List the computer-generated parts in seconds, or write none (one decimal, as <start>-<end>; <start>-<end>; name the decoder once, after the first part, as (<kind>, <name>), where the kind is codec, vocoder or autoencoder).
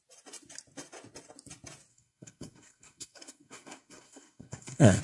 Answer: 1.9-5.0 (codec, SNAC)